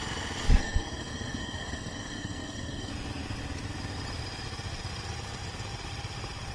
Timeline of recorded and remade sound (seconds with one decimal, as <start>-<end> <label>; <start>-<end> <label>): 0.0-0.6 recorded; 0.6-2.9 remade; 2.9-6.5 recorded